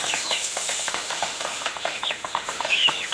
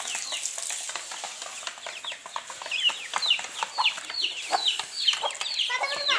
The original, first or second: second